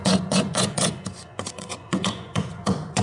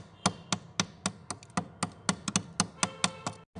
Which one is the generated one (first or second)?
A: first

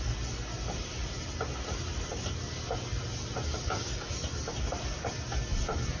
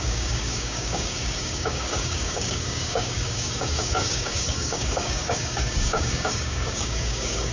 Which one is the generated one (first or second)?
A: second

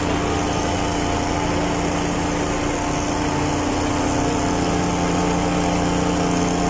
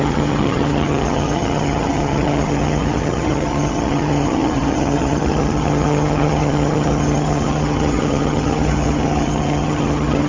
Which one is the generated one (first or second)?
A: second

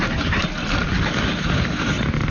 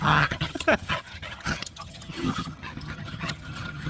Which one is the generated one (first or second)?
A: second